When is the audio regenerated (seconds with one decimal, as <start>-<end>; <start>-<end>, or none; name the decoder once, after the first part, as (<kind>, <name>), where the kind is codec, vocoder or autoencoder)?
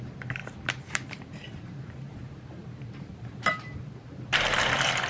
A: 0.0-5.1 (vocoder, BigVGAN v2)